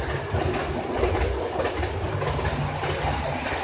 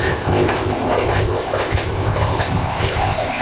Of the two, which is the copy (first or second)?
second